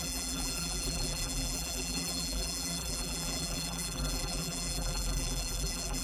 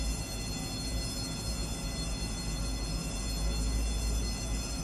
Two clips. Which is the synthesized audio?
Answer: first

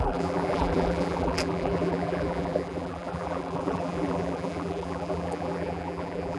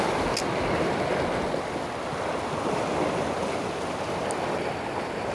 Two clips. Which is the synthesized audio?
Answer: first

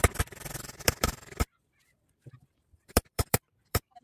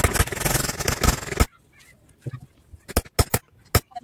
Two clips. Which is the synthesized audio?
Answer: first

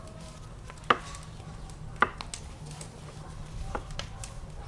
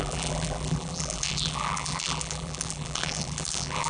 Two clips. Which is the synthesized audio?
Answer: second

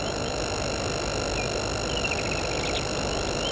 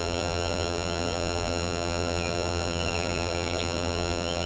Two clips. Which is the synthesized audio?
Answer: second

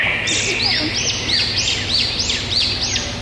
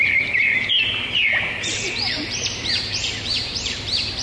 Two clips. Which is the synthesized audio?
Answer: second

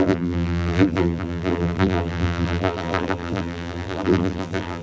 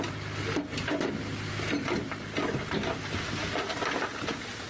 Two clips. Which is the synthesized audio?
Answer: first